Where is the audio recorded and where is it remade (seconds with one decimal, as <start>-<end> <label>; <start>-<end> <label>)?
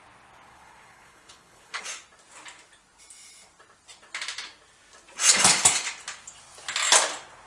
0.0-0.5 recorded; 0.5-1.8 remade; 1.8-7.5 recorded